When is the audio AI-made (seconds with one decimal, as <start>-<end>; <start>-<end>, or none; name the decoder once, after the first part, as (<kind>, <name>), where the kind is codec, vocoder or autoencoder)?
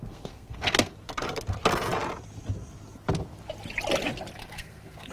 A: 0.0-0.9 (codec, SNAC); 4.4-5.1